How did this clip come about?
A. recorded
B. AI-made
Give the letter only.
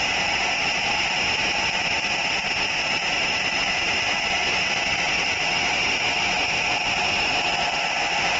A